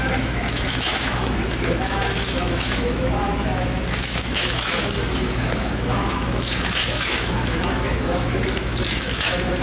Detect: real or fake fake